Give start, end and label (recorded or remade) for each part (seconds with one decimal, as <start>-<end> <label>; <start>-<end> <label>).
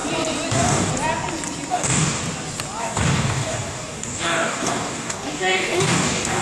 0.0-0.5 recorded; 0.5-0.9 remade; 0.9-1.7 recorded; 1.7-2.2 remade; 2.2-2.8 recorded; 2.8-6.4 remade